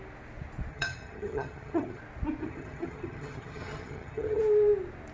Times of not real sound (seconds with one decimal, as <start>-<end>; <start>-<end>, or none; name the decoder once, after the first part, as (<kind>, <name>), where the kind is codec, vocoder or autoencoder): 0.7-2.0 (vocoder, HiFi-GAN); 2.4-4.4